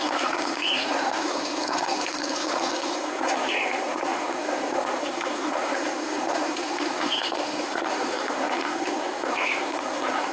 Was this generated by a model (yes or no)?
yes